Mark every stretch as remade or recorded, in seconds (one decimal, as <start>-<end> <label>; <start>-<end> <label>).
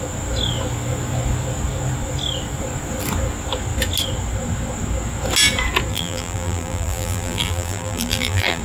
0.0-5.9 recorded; 5.9-8.6 remade